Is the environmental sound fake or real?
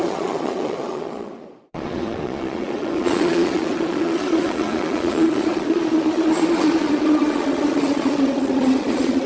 fake